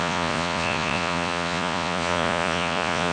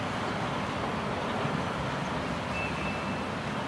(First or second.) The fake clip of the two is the first